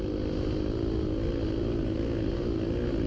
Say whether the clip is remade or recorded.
recorded